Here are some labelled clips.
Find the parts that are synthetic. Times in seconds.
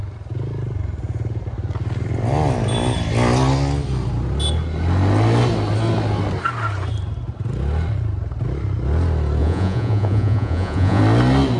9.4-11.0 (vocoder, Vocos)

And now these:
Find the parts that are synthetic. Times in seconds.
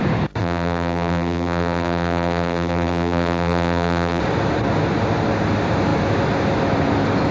0.4-4.2 (vocoder, BigVGAN v2)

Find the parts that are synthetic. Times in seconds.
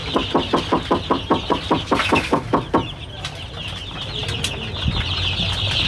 none